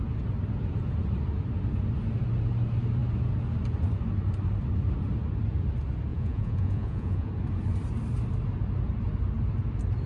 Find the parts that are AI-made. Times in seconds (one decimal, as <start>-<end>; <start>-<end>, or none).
6.1-7.3